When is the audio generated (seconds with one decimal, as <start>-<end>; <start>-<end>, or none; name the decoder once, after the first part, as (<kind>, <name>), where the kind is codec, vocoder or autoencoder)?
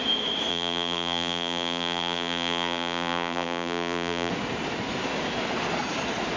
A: 0.5-4.3 (vocoder, BigVGAN v2)